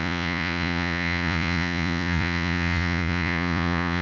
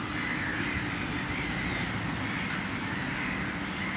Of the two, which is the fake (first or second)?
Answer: first